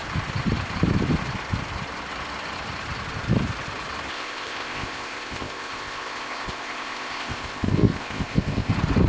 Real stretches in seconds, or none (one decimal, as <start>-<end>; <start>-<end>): 0.0-4.1; 8.7-9.1